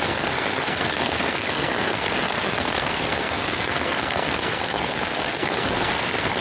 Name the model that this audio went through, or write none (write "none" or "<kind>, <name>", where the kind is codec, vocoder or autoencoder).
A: codec, SNAC